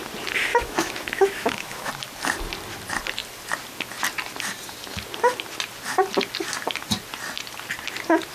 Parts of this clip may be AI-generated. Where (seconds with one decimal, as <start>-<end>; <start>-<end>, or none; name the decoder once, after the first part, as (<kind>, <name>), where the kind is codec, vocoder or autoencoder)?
0.5-1.9 (autoencoder, DAC-VAE)